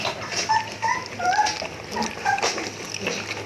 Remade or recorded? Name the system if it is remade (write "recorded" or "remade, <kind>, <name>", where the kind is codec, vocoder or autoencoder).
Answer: recorded